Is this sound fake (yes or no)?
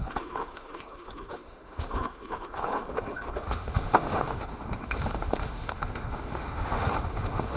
yes